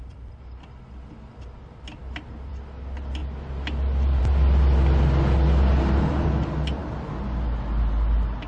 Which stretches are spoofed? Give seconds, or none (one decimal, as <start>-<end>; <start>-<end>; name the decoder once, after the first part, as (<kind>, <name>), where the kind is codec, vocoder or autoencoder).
none